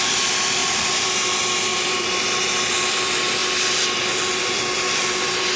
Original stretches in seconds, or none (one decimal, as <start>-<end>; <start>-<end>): 0.0-0.6; 1.1-1.7; 2.2-5.6